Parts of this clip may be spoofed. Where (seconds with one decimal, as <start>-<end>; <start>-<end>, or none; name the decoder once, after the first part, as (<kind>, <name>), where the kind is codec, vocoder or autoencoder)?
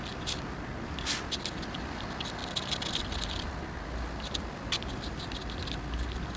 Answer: none